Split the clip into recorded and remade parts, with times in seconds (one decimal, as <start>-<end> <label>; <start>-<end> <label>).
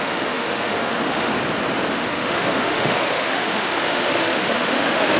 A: 0.0-1.3 remade; 1.3-1.9 recorded; 1.9-5.2 remade